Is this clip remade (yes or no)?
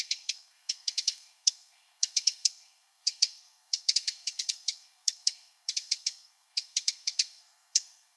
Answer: yes